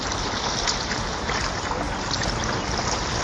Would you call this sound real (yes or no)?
yes